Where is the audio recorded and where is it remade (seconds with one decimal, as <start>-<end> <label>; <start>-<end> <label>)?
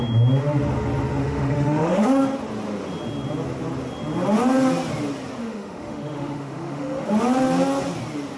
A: 0.0-1.2 recorded; 1.2-2.2 remade; 2.2-5.4 recorded; 5.4-7.1 remade; 7.1-8.4 recorded